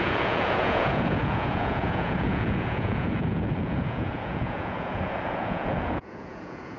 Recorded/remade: remade